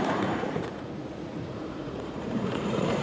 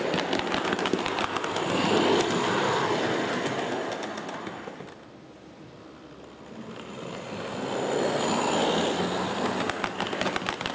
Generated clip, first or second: first